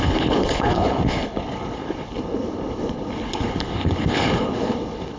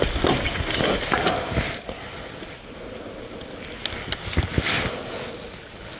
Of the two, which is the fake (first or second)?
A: first